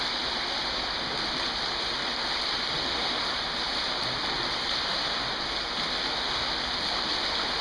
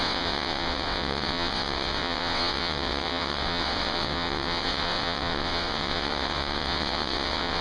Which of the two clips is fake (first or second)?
second